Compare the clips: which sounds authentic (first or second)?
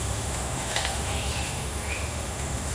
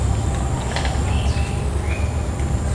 second